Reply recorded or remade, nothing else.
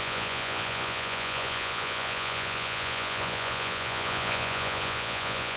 remade